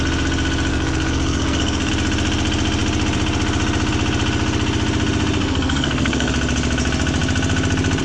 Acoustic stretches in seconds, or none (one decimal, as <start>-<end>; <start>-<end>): 0.0-0.7; 1.9-5.4; 6.3-8.0